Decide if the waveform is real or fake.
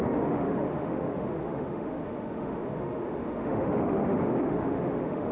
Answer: fake